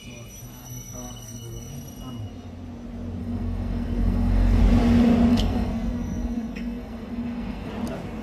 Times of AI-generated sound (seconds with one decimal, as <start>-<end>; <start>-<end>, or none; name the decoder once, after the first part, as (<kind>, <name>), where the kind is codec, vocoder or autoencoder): 0.6-1.7 (codec, SNAC); 3.2-4.6; 5.3-7.7